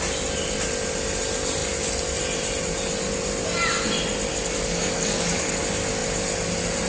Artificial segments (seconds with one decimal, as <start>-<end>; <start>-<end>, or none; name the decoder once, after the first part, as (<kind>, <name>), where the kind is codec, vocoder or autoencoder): 4.3-5.6 (codec, DAC)